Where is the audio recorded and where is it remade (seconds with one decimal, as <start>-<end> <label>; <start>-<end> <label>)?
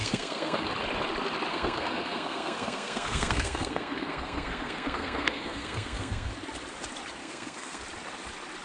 0.0-0.7 remade; 0.7-1.5 recorded; 1.5-6.3 remade; 6.3-7.2 recorded; 7.2-7.8 remade; 7.8-8.6 recorded